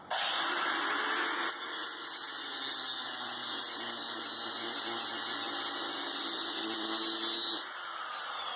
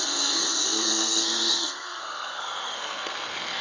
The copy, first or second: second